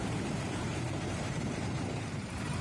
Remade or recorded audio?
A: remade